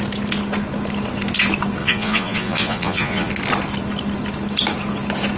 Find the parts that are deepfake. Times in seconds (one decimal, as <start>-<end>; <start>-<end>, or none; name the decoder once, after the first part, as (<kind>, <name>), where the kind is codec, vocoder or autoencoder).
1.8-3.3 (vocoder, Vocos)